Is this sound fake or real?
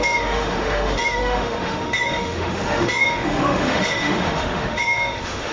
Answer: fake